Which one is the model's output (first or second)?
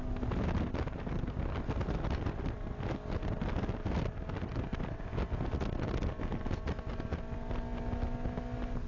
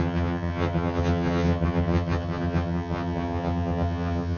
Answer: second